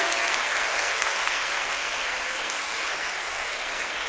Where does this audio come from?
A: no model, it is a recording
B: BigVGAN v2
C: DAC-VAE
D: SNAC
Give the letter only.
D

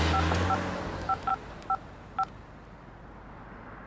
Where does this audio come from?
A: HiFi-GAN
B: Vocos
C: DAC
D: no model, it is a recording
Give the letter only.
D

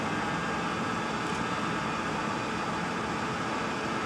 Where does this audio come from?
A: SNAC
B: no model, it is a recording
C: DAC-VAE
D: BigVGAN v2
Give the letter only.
B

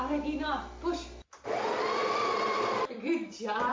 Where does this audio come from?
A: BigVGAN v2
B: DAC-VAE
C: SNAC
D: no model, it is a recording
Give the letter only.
A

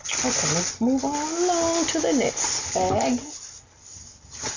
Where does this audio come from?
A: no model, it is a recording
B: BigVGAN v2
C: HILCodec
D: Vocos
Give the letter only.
A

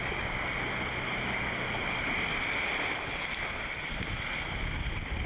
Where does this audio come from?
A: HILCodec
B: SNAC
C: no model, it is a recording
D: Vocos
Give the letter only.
C